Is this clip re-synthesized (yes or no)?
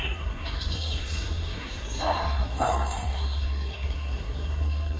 yes